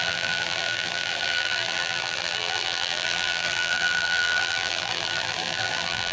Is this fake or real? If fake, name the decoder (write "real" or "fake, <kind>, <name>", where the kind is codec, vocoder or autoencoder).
fake, vocoder, BigVGAN v2